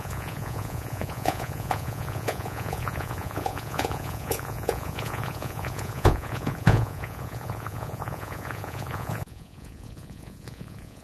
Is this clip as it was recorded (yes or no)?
no